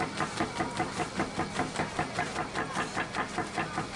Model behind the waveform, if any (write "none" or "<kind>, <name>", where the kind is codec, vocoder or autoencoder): none